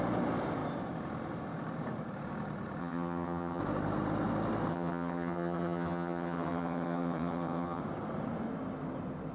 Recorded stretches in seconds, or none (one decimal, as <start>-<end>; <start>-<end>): 0.0-2.8; 3.6-4.7; 7.8-9.3